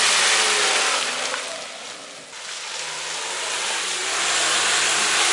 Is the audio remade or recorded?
recorded